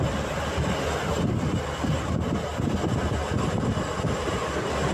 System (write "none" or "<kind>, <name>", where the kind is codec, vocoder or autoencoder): none